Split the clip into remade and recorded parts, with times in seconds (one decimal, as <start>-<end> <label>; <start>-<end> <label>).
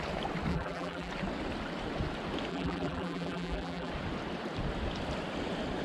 0.0-0.5 recorded; 0.5-1.1 remade; 1.1-2.5 recorded; 2.5-3.9 remade; 3.9-5.8 recorded